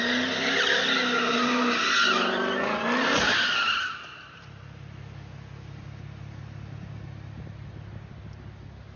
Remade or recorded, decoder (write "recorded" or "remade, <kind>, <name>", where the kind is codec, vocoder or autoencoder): recorded